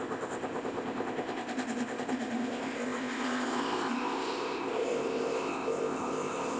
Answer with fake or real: fake